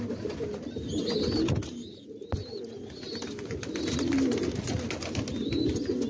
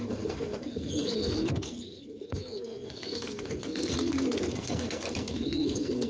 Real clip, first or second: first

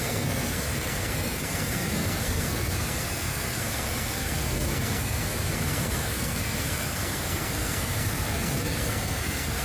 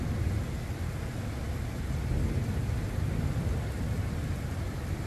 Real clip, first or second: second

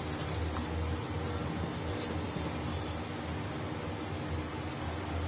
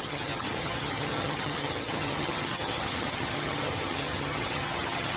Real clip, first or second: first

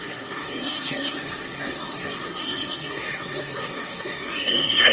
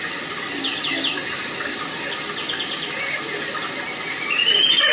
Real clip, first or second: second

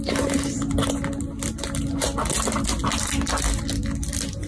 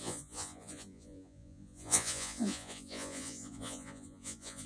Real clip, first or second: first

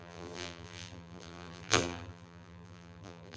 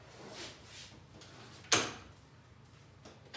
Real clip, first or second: second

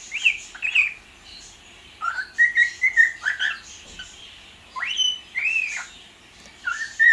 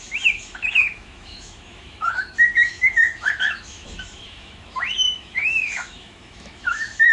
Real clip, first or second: first